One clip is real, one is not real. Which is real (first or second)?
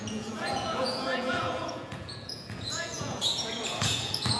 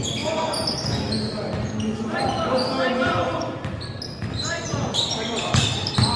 second